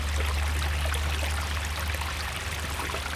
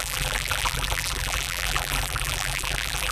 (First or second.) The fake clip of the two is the second